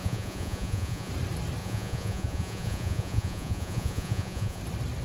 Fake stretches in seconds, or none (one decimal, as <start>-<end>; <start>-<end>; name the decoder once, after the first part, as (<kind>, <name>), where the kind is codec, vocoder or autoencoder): 0.0-1.1 (vocoder, Vocos); 1.6-4.6